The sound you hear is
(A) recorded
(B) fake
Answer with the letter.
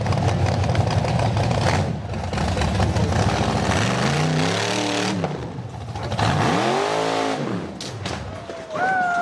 A